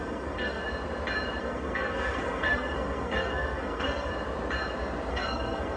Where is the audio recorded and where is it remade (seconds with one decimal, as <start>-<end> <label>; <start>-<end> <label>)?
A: 0.0-0.6 remade; 0.6-1.4 recorded; 1.4-4.1 remade; 4.1-5.1 recorded; 5.1-5.8 remade